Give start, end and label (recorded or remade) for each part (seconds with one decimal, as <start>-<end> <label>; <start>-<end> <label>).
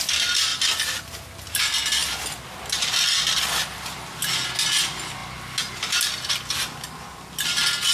0.0-7.9 recorded